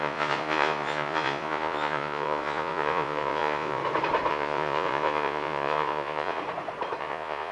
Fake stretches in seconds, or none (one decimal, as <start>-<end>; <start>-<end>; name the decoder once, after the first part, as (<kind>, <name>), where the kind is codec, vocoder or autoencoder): 0.0-3.8 (vocoder, Vocos); 4.3-6.4; 7.0-7.5